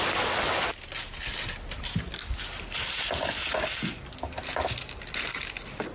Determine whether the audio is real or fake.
real